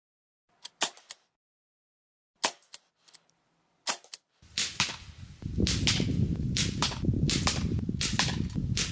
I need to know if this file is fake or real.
real